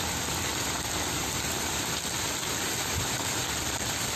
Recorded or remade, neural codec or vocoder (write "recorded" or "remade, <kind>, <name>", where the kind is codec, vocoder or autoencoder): recorded